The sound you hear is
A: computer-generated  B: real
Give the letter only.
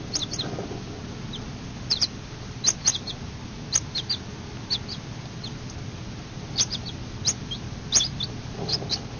B